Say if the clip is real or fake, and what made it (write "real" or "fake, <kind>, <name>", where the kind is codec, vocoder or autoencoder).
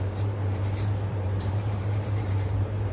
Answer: fake, vocoder, BigVGAN v2